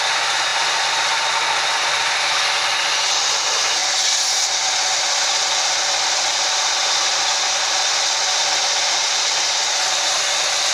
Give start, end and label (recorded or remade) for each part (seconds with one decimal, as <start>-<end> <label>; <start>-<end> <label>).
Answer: 0.0-10.7 recorded